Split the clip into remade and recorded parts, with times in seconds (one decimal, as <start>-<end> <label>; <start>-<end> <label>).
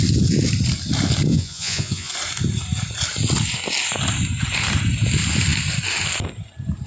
0.0-1.3 recorded; 1.3-2.1 remade; 2.1-6.9 recorded